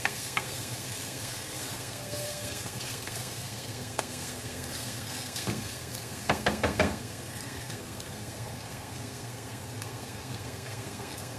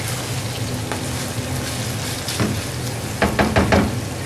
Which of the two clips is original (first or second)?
second